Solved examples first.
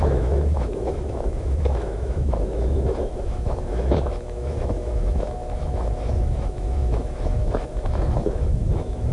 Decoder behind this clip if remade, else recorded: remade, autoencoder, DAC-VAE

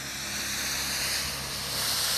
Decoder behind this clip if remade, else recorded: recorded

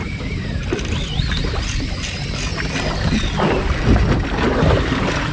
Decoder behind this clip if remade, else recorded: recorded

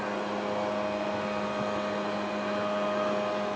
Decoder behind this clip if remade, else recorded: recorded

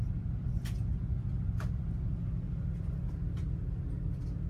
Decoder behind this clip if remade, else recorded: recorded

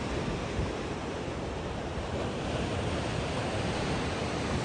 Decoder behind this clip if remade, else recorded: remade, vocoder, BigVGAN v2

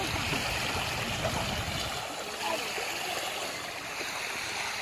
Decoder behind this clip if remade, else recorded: recorded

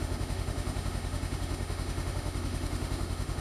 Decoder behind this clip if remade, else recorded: remade, autoencoder, DAC-VAE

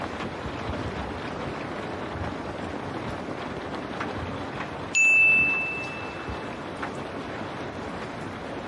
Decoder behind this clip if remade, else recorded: recorded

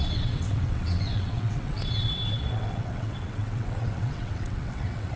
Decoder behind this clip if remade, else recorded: remade, vocoder, WaveNeXt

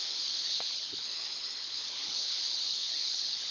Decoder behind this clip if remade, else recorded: remade, codec, HILCodec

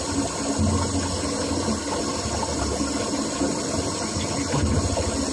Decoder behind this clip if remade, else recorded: recorded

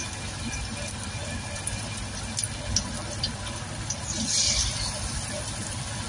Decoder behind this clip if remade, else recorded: recorded